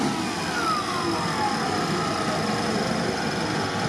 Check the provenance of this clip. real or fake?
real